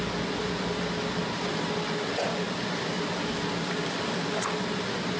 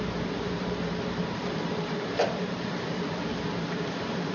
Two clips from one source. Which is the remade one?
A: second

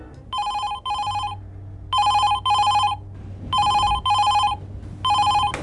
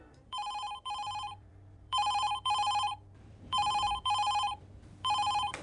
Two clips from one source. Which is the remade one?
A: second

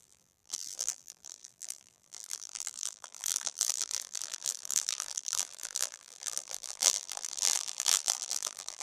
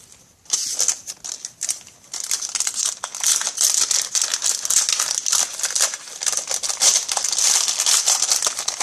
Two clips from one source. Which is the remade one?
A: first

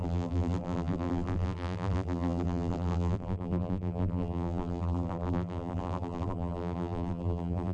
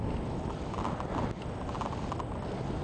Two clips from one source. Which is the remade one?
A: first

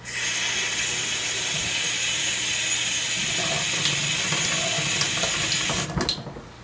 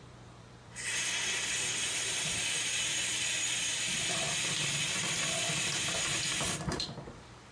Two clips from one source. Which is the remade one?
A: second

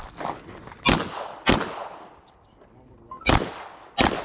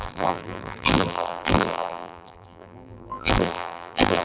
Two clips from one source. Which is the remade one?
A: second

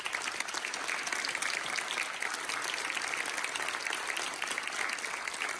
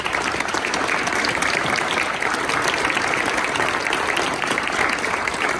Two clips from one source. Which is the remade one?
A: second